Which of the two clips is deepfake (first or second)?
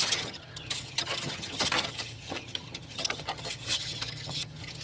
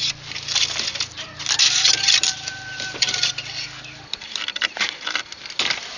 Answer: first